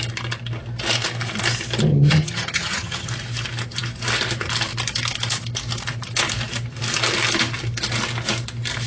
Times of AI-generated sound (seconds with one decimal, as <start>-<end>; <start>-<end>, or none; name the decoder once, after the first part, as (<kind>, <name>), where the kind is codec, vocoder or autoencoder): 1.9-3.1 (vocoder, HiFi-GAN)